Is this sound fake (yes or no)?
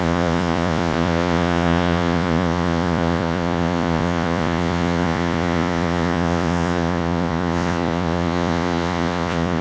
yes